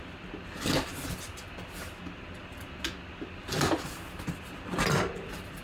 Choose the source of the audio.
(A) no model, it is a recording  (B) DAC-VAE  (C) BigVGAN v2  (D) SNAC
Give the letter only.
A